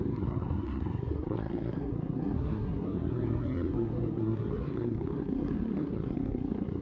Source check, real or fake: fake